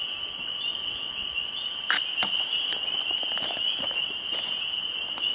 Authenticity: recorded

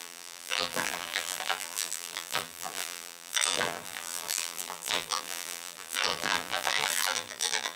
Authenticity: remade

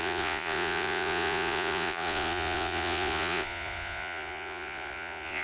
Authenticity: remade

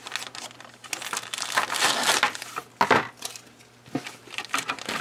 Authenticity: recorded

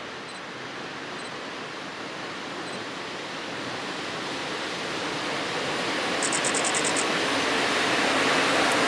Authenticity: recorded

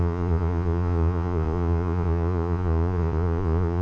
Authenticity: remade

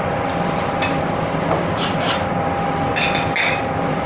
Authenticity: recorded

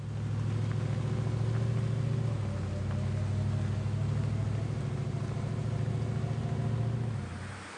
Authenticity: recorded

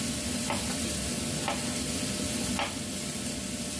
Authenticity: recorded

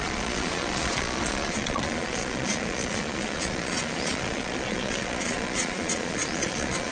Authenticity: remade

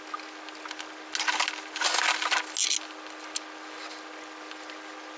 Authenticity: recorded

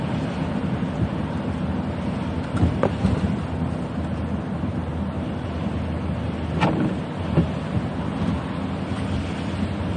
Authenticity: recorded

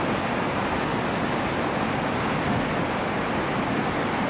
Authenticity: recorded